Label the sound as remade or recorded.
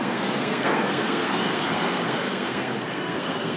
remade